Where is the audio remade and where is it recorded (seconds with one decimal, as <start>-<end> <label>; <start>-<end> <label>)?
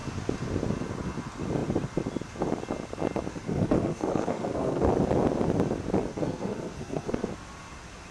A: 0.0-3.3 recorded; 3.3-4.9 remade; 4.9-6.1 recorded; 6.1-7.3 remade; 7.3-8.1 recorded